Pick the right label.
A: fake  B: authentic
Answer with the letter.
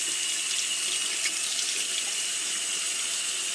B